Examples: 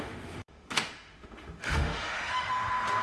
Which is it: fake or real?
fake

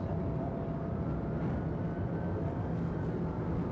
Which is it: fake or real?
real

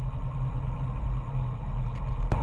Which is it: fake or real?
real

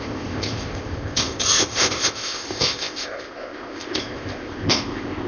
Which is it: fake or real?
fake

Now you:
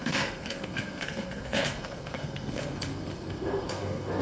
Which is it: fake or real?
fake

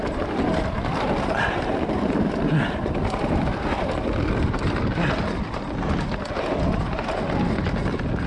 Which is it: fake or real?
real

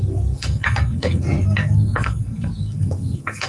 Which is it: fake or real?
fake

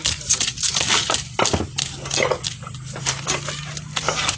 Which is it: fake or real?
real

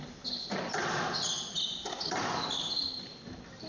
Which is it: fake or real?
real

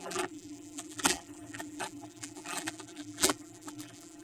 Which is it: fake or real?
fake